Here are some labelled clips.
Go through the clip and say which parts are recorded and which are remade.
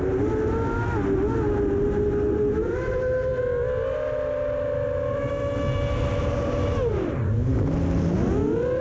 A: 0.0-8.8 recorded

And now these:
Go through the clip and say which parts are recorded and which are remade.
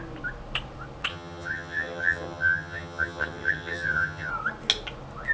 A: 0.0-1.1 recorded; 1.1-4.3 remade; 4.3-5.3 recorded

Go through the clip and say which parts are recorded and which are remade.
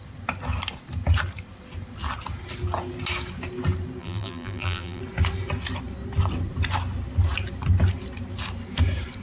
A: 0.0-4.0 recorded; 4.0-5.0 remade; 5.0-9.2 recorded